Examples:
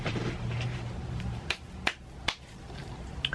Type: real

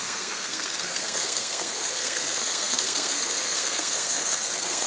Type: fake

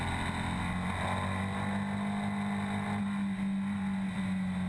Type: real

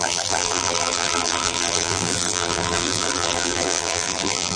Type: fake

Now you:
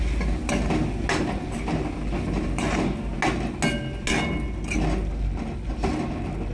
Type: real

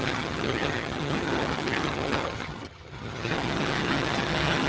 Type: fake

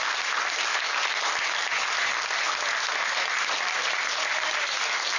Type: real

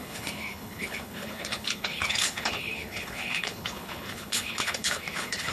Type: fake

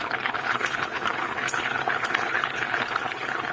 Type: fake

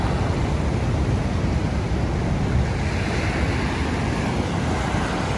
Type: real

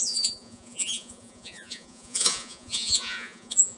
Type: fake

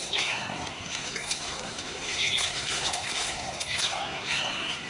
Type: fake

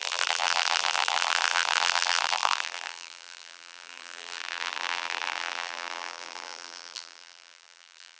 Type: fake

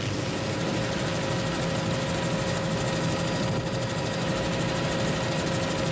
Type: real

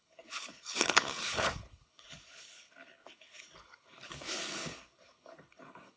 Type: fake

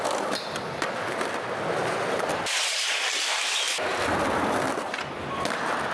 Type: real